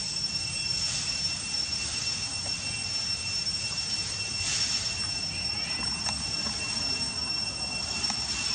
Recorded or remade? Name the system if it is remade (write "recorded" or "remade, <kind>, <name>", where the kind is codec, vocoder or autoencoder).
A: recorded